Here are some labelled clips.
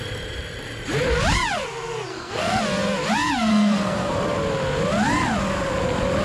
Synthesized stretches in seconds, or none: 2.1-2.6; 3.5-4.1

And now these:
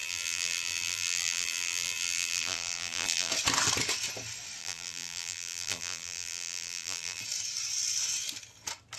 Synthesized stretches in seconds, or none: 0.0-3.3; 4.6-7.2

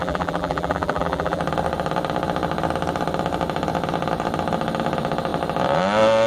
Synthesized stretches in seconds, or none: 0.0-1.4